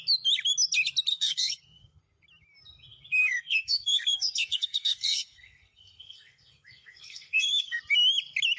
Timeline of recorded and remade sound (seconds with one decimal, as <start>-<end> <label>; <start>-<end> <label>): 0.0-1.1 recorded; 1.1-2.0 remade; 2.0-3.2 recorded; 3.2-7.8 remade; 7.8-8.6 recorded